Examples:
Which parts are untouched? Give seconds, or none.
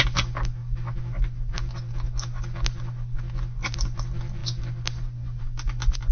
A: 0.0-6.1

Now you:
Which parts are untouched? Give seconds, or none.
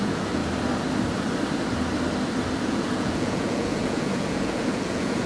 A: 0.4-2.6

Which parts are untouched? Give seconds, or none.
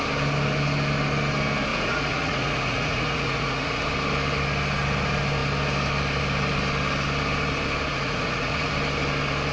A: 0.0-1.7; 3.8-7.9; 8.7-9.5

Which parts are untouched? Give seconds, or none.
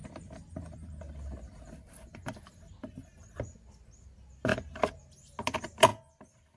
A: 0.0-6.6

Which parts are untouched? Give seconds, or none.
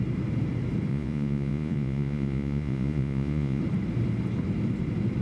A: 0.0-0.9; 3.6-5.2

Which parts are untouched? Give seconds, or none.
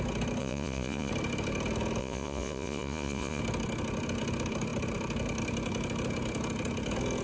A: 0.0-0.4; 1.1-2.0; 3.4-7.2